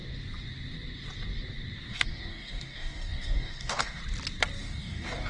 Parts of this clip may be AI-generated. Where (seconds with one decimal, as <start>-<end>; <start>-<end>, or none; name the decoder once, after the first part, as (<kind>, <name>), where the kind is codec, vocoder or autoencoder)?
1.9-4.0 (codec, DAC); 4.6-5.3